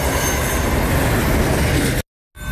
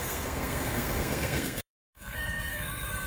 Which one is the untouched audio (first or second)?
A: first